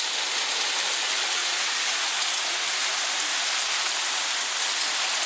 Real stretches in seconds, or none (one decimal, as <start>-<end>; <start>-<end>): 0.0-1.4; 3.1-5.3